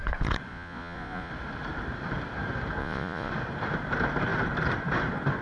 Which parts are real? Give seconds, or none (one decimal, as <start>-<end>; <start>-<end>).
0.0-0.5; 1.3-2.8; 3.3-5.4